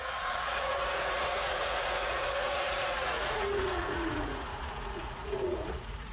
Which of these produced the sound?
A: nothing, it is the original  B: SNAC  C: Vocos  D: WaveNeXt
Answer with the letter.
C